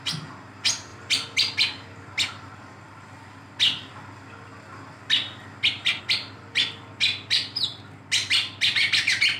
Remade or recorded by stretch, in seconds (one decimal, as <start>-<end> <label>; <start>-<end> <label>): 0.0-9.4 recorded